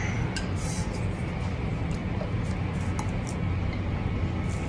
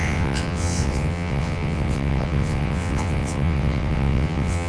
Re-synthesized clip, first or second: second